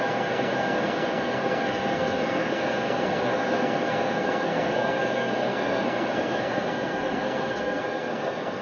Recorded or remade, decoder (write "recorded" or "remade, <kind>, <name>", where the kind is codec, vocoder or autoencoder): remade, codec, SNAC